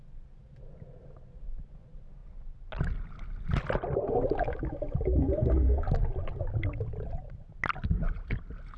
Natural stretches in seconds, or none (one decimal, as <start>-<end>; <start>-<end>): 0.0-5.2; 5.8-8.8